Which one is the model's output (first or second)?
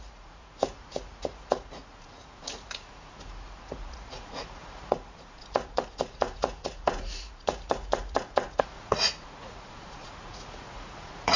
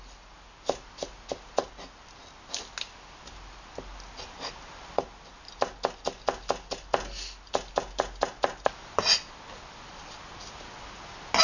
first